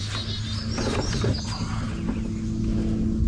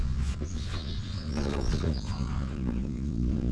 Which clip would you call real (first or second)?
first